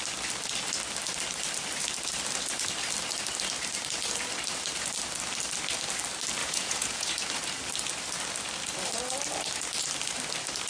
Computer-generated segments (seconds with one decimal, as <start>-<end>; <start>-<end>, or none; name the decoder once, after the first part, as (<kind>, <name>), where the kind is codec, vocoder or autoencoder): 6.4-7.1 (vocoder, Vocos)